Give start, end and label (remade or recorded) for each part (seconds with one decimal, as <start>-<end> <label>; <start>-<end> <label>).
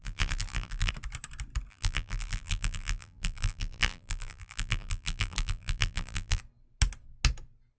0.0-0.9 remade; 0.9-1.7 recorded; 1.7-6.4 remade; 6.4-7.8 recorded